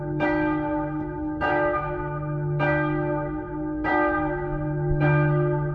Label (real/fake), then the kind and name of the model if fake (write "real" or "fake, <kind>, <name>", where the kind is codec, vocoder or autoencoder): fake, autoencoder, DAC-VAE